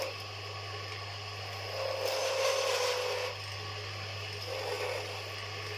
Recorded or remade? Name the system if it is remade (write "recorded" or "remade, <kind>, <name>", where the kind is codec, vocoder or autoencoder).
recorded